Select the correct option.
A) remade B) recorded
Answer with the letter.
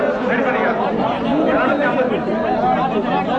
B